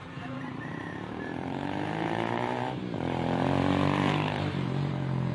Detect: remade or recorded remade